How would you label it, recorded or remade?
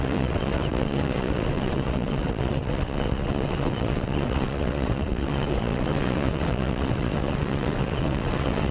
remade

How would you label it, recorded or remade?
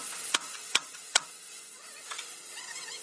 remade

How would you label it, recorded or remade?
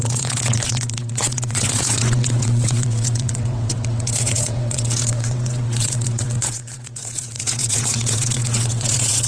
remade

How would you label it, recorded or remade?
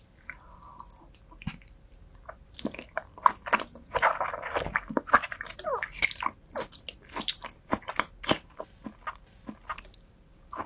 recorded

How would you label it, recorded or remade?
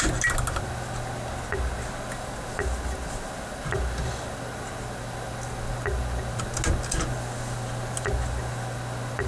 recorded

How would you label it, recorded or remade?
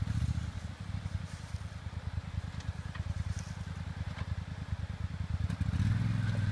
recorded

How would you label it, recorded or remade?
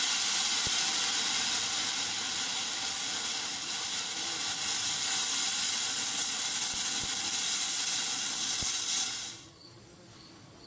recorded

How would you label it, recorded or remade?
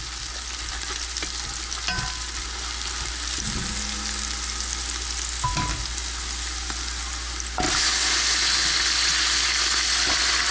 recorded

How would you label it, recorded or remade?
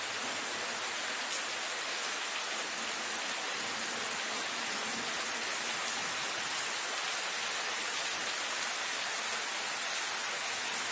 recorded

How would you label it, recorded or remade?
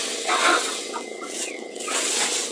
remade